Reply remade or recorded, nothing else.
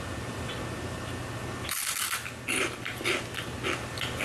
recorded